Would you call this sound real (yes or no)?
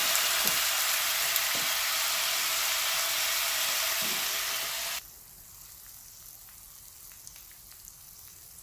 yes